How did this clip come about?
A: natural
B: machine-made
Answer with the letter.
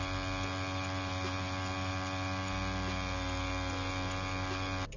A